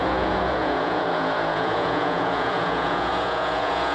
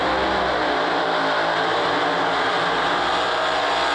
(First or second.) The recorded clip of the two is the second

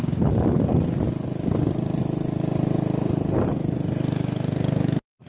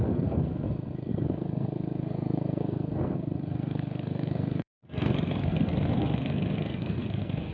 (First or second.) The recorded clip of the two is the first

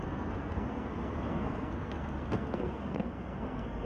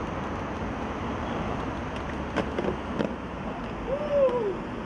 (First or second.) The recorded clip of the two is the second